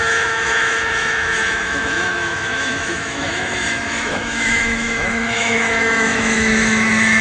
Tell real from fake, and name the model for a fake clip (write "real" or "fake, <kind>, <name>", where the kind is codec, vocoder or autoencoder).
fake, autoencoder, DAC-VAE